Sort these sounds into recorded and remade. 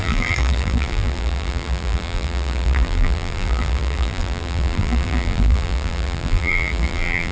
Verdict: remade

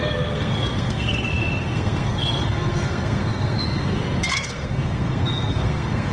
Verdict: remade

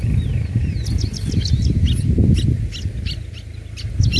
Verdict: recorded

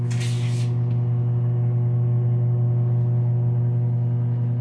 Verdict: recorded